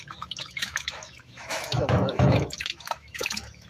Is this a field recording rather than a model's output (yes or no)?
no